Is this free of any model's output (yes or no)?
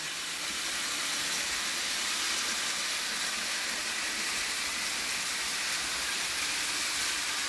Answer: yes